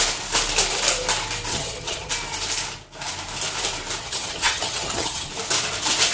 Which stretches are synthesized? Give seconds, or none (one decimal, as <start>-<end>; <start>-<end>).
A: 1.5-2.1; 4.0-5.3